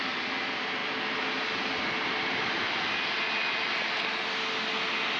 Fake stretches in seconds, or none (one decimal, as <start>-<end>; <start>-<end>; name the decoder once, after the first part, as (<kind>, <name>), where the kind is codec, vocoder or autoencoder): none